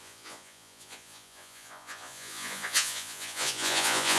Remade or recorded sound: remade